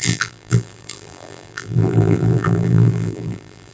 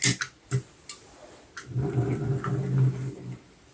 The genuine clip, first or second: second